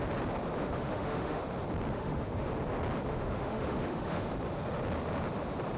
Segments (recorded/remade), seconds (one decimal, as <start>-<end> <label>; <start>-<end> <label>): 0.0-0.6 recorded; 0.6-1.4 remade; 1.4-1.9 recorded; 1.9-2.5 remade; 2.5-3.1 recorded; 3.1-4.3 remade; 4.3-5.8 recorded